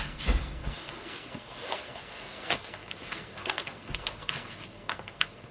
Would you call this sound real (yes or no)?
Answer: no